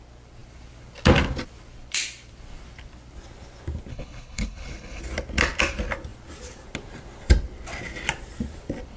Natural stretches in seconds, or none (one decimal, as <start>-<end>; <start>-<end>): 0.0-3.9; 5.0-9.0